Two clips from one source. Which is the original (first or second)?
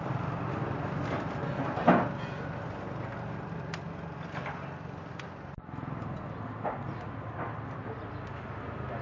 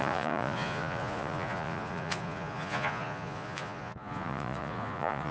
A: first